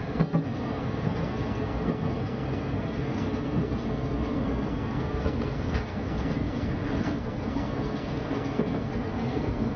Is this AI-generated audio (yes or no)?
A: yes